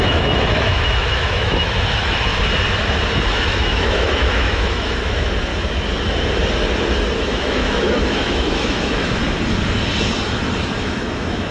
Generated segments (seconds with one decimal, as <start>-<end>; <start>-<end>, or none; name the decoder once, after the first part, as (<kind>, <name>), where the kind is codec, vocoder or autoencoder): 0.0-2.3 (autoencoder, DAC-VAE); 3.3-5.5; 7.2-9.2; 10.8-11.5